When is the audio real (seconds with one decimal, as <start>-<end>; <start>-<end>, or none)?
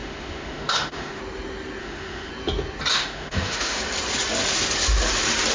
1.2-1.8; 2.3-2.9; 3.8-5.5